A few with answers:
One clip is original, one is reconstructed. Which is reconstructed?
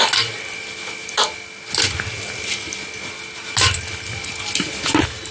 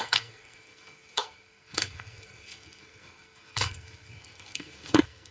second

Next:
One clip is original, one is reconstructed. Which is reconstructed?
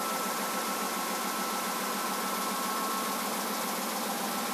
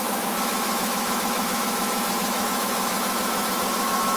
second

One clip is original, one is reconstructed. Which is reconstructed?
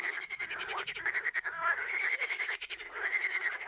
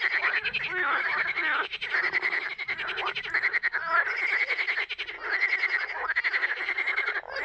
first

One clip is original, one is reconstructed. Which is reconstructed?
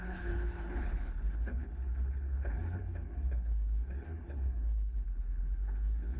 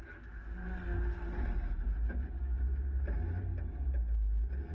first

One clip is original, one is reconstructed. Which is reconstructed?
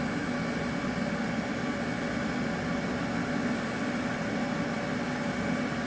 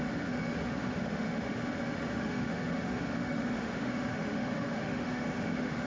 second